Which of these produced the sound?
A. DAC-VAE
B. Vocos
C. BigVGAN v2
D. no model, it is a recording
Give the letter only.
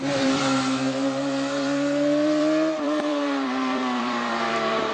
C